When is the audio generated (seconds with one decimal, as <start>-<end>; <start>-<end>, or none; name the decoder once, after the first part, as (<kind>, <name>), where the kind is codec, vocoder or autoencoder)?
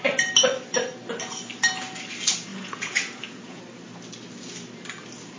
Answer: 2.5-3.6 (vocoder, Vocos)